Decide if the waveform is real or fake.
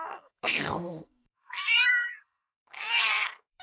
fake